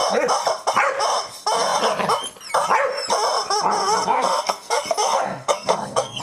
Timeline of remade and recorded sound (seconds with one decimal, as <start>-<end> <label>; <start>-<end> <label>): 0.0-3.8 recorded; 3.8-6.2 remade